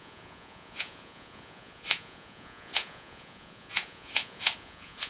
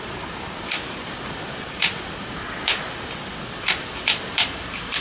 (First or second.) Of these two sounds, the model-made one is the first